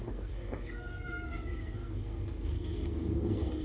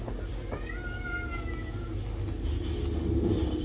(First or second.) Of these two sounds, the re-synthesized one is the first